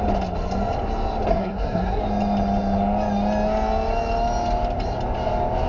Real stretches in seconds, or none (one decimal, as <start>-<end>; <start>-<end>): 0.0-1.3; 2.0-5.7